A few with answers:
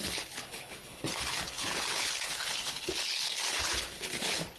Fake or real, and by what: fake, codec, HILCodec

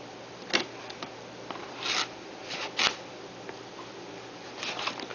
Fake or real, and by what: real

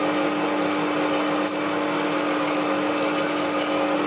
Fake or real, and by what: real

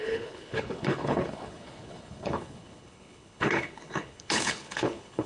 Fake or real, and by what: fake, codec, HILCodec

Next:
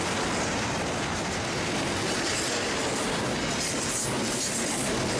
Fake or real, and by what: real